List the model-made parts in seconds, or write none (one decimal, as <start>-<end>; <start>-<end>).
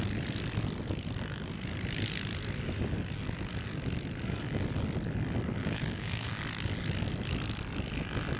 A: 5.6-6.3